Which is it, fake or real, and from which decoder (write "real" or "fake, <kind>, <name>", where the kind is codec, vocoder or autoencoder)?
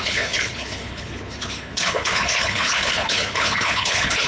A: fake, codec, HILCodec